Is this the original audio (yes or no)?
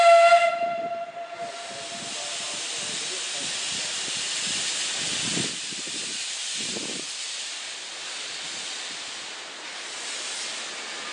yes